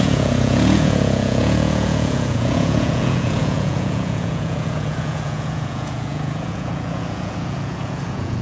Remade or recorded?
remade